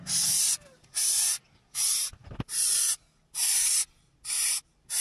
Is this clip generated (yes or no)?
no